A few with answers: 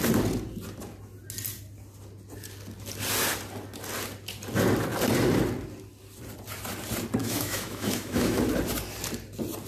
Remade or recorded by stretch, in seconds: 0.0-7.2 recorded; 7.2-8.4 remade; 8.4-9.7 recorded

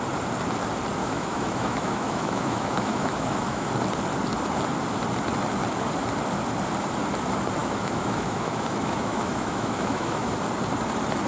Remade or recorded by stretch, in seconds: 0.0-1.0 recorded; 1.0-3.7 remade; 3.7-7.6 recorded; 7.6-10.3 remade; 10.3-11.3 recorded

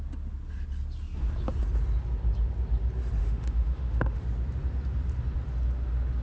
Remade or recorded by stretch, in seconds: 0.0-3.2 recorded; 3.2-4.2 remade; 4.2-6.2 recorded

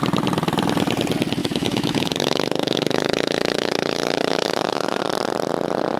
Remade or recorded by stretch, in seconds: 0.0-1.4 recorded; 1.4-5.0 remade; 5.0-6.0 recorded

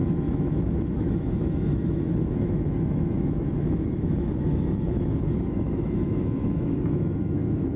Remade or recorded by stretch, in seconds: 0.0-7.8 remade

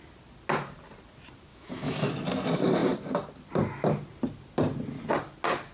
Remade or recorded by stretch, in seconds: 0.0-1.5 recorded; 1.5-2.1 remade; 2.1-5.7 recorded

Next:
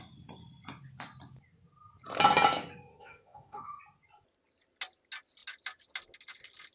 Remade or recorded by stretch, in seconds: 0.0-2.9 recorded; 2.9-3.8 remade; 3.8-6.7 recorded